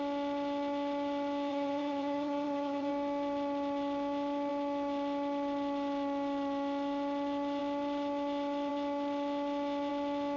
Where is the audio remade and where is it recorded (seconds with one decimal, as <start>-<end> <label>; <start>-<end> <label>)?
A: 0.0-1.5 recorded; 1.5-2.9 remade; 2.9-10.4 recorded